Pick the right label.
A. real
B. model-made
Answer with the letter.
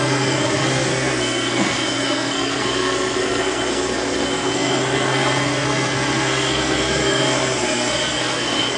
B